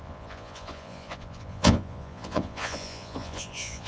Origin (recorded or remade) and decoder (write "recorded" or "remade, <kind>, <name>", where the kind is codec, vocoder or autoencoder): remade, vocoder, Vocos